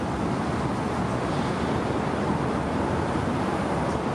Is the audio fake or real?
real